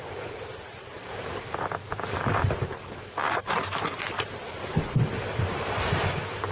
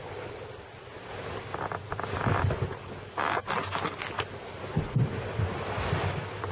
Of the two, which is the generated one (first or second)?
first